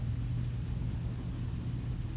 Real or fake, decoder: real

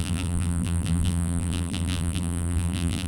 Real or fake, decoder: fake, vocoder, BigVGAN v2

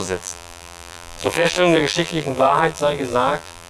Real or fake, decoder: fake, vocoder, BigVGAN v2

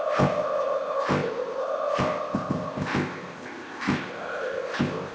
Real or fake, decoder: fake, codec, ZipCodec